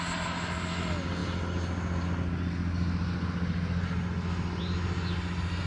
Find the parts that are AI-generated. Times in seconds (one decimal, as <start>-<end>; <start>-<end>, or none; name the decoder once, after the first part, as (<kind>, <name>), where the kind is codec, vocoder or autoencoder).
none

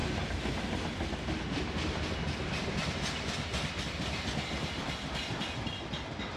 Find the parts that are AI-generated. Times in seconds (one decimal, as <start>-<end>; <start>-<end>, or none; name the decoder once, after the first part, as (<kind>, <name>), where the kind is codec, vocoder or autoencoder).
none

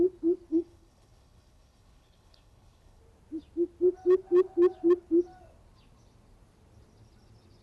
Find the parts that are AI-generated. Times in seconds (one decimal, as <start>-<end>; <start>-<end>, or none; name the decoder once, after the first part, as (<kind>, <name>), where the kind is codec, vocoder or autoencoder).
0.5-3.0 (codec, HILCodec)

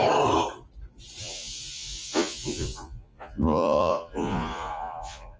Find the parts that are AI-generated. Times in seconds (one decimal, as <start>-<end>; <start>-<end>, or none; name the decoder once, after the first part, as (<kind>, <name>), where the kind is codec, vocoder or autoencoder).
1.2-5.4 (vocoder, Vocos)

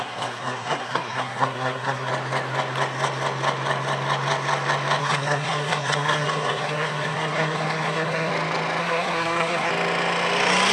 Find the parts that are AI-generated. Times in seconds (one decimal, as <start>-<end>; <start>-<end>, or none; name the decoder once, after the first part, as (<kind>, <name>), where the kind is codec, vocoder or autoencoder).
0.0-2.1 (codec, SNAC); 5.0-8.3; 8.8-9.7

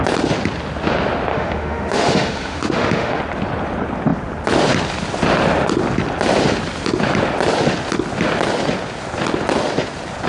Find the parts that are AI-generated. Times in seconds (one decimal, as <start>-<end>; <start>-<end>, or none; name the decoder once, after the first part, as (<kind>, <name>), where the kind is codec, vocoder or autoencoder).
1.3-3.2 (autoencoder, DAC-VAE)